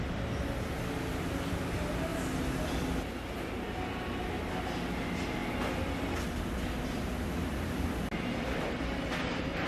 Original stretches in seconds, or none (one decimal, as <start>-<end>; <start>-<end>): 0.0-9.7